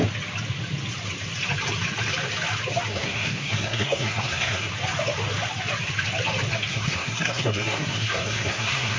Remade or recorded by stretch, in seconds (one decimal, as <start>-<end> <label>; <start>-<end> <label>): 0.0-2.9 recorded; 2.9-4.7 remade; 4.7-6.7 recorded; 6.7-9.0 remade